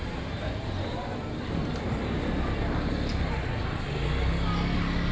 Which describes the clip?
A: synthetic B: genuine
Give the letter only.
B